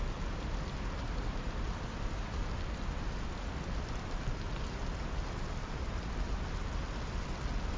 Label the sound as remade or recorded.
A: recorded